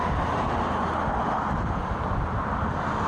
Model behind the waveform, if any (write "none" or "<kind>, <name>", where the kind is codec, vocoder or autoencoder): none